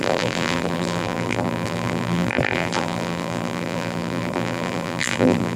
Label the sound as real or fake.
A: fake